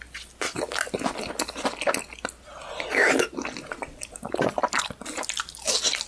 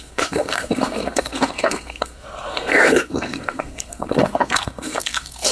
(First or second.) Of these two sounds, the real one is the first